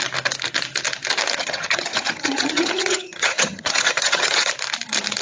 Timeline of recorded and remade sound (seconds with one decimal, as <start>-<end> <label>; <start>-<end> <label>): 0.0-1.4 recorded; 1.4-4.5 remade; 4.5-5.2 recorded